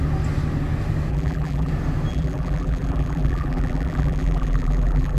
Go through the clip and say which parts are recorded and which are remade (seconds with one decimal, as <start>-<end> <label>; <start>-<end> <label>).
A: 0.0-1.1 recorded; 1.1-1.7 remade; 1.7-2.1 recorded; 2.1-5.2 remade